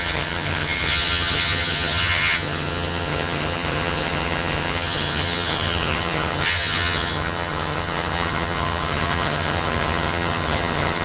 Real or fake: fake